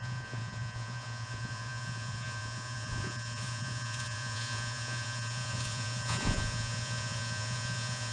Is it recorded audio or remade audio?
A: remade